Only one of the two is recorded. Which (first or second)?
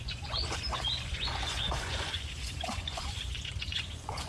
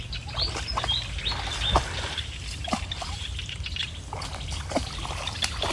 second